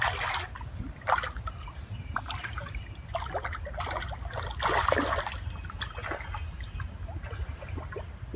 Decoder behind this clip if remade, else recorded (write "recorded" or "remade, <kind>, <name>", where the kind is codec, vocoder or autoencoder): recorded